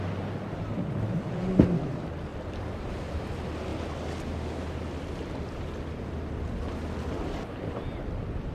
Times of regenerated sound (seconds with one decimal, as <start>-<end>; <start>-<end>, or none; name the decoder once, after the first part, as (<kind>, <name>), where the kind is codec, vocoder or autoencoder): 2.3-3.3 (vocoder, BigVGAN v2)